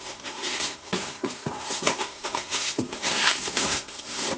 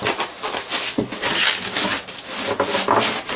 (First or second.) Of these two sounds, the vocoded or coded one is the first